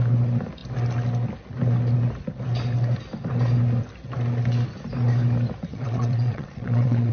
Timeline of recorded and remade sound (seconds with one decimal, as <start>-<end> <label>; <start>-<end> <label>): 0.0-5.7 recorded; 5.7-7.1 remade